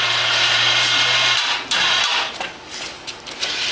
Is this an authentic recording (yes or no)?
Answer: no